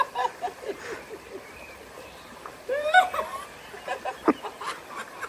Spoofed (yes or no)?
yes